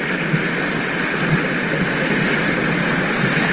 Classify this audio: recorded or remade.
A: recorded